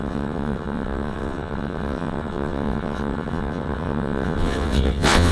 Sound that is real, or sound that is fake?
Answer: fake